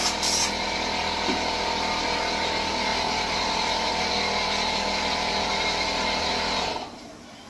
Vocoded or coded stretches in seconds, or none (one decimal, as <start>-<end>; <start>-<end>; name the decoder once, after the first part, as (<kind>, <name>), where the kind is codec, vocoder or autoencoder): 2.9-4.1 (vocoder, BigVGAN v2)